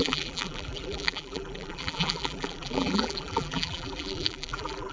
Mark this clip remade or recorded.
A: remade